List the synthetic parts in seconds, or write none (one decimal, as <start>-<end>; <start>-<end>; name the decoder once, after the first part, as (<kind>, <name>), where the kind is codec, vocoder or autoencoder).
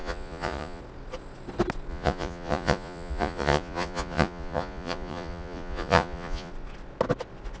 0.0-0.8 (vocoder, Vocos); 1.9-6.5